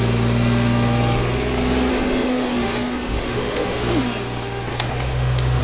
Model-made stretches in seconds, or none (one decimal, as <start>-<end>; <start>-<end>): 1.9-3.9; 4.7-5.6